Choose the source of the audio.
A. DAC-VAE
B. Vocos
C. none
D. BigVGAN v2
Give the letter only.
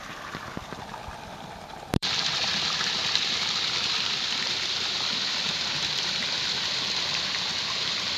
D